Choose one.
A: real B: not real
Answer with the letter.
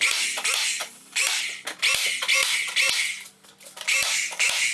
A